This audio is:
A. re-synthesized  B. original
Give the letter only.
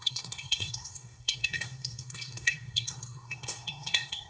A